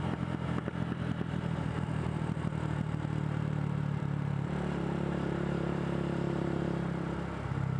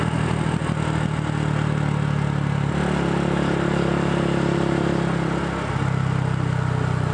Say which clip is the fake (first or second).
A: first